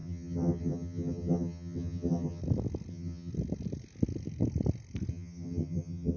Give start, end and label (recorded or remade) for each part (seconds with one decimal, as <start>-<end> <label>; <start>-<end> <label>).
0.0-2.4 remade; 2.4-2.9 recorded; 2.9-3.3 remade; 3.3-5.1 recorded; 5.1-6.2 remade